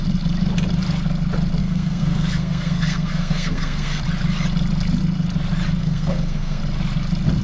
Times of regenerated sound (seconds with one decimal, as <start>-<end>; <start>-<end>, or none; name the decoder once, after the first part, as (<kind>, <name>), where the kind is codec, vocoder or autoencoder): 1.6-4.0 (codec, SNAC); 5.8-6.6